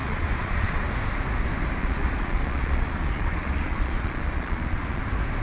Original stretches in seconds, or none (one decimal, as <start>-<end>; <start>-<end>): 0.8-1.8; 5.0-5.4